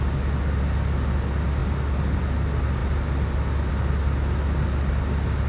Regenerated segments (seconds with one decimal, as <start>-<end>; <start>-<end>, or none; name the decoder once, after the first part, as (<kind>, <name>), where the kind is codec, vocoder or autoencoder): none